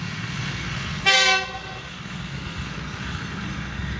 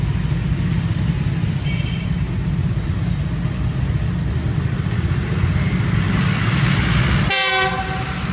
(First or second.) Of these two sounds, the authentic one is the second